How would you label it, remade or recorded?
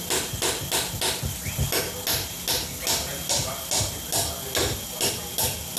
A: recorded